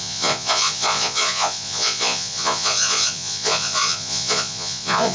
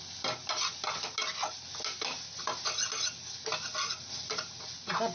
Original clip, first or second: second